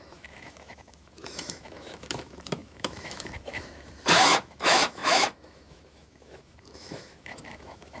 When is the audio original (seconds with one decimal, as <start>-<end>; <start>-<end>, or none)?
none